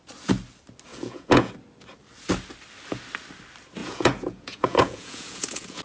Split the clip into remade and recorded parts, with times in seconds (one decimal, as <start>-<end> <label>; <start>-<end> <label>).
0.0-0.9 recorded; 0.9-1.5 remade; 1.5-3.8 recorded; 3.8-5.8 remade